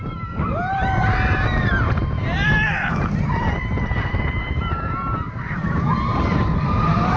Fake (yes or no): yes